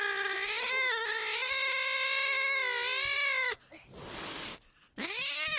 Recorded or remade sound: recorded